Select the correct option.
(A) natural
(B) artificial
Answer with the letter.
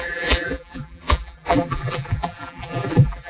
B